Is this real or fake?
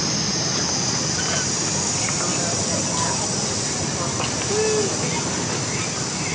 real